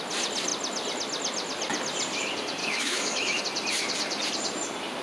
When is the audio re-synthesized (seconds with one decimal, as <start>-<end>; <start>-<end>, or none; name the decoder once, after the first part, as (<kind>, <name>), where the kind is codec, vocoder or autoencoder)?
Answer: 2.6-3.4 (autoencoder, DAC-VAE)

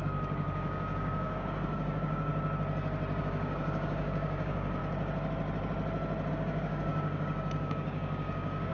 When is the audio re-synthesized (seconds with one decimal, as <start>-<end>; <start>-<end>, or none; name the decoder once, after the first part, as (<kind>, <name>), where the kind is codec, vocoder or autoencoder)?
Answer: 0.0-2.3 (codec, DAC); 3.2-4.8; 6.3-8.7

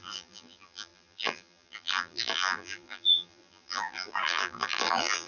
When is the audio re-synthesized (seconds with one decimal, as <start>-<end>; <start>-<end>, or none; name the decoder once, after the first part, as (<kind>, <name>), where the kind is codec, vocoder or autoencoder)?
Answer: 0.0-5.3 (vocoder, BigVGAN v2)

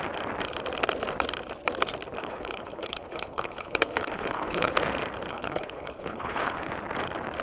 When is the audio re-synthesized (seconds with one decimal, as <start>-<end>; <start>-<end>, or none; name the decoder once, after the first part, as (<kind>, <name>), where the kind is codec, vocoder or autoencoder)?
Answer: 2.2-4.7 (codec, HILCodec); 5.3-6.7

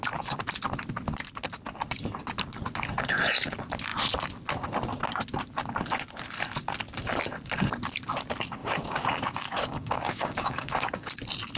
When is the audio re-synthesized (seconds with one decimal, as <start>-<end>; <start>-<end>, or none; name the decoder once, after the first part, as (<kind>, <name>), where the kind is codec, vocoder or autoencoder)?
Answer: 8.6-11.1 (codec, DAC)

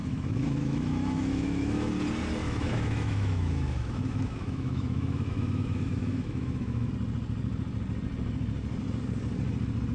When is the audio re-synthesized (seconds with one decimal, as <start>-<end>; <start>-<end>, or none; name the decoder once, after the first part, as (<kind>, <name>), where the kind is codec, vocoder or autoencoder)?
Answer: 0.0-1.9 (autoencoder, DAC-VAE); 2.4-6.9